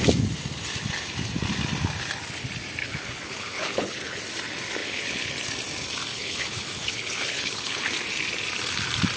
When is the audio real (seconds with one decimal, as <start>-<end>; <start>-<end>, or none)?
0.0-2.8; 4.2-4.8; 5.3-6.1; 7.9-9.2